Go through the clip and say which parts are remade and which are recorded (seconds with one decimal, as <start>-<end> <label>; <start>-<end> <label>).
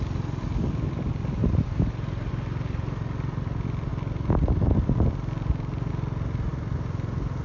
0.0-1.4 recorded; 1.4-2.3 remade; 2.3-7.4 recorded